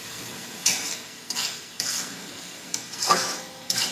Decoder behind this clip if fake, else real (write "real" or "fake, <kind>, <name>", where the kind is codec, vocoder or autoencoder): fake, codec, SNAC